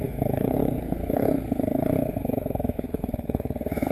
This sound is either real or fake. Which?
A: fake